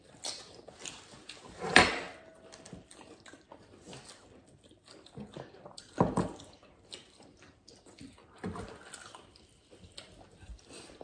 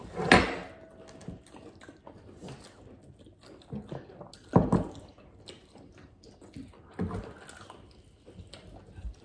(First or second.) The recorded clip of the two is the second